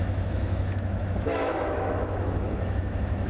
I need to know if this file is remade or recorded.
remade